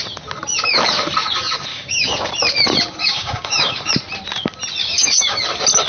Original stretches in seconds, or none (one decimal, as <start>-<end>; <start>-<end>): 0.0-1.7; 2.3-3.0; 3.9-4.8; 5.4-5.9